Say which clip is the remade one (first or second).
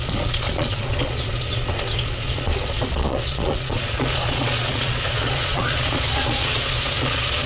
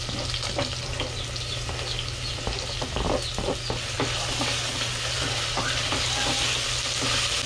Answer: first